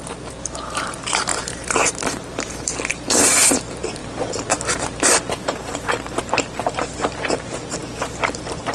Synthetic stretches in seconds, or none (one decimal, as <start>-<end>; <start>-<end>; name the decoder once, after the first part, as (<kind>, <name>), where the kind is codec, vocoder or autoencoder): 0.0-8.7 (vocoder, BigVGAN v2)